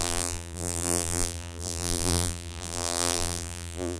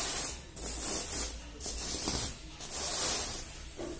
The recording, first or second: second